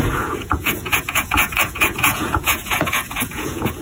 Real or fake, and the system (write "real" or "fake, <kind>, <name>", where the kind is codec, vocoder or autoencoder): fake, vocoder, Vocos